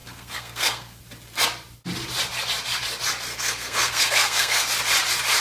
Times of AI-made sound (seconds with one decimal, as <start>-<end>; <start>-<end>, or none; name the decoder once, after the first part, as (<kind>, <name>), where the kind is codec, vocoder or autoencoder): 0.0-1.0 (codec, SNAC); 3.3-4.7